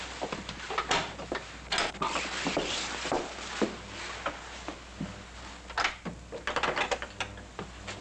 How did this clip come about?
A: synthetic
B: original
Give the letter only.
B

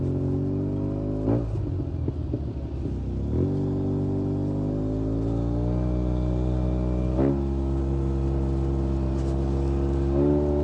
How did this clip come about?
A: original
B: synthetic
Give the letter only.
A